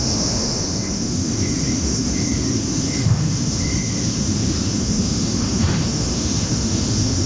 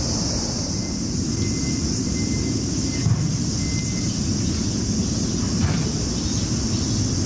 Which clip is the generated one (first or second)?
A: first